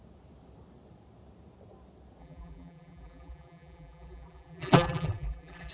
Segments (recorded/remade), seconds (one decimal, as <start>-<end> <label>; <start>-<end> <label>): 0.0-2.2 recorded; 2.2-5.7 remade